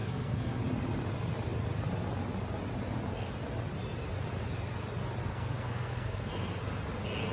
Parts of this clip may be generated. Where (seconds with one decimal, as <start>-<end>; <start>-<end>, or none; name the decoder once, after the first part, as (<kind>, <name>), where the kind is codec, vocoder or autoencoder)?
0.0-0.6 (codec, SNAC); 5.3-6.3